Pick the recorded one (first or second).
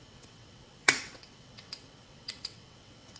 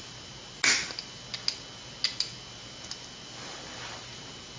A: second